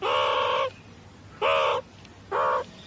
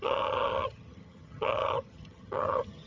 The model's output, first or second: second